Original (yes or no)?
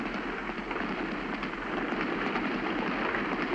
yes